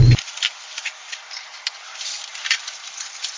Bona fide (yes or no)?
yes